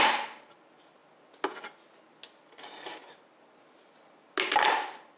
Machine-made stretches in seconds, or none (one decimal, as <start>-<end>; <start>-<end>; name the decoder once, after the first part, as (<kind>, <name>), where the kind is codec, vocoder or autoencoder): none